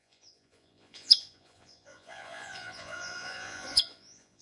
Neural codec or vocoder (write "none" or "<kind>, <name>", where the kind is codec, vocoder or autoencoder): vocoder, Vocos